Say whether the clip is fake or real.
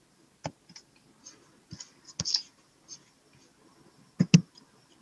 real